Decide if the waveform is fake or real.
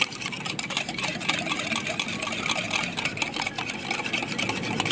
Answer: real